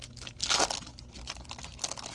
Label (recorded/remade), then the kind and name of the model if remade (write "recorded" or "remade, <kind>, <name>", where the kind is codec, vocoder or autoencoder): recorded